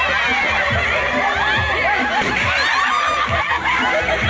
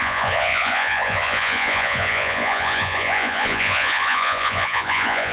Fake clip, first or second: second